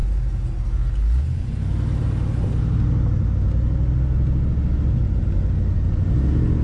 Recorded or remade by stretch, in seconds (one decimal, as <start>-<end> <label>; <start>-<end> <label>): 0.0-6.6 recorded